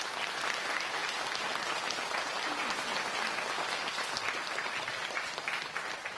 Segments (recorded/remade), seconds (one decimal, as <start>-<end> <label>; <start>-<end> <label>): 0.0-6.2 recorded